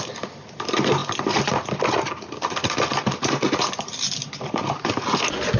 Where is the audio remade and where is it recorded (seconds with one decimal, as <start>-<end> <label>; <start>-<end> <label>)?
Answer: 0.0-5.6 recorded